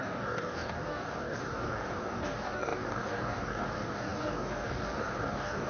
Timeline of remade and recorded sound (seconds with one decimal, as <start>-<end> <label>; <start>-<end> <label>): 0.0-5.7 remade